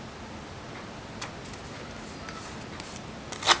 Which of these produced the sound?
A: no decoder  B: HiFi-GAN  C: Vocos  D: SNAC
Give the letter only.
A